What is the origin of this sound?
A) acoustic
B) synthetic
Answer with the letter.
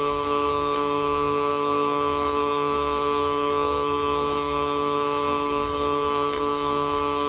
B